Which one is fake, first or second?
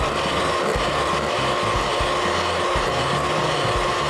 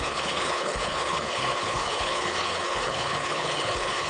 second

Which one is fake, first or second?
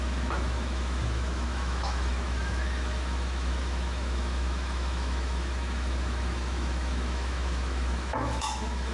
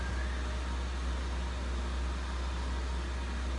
first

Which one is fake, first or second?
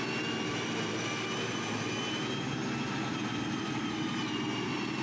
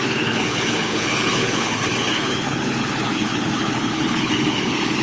second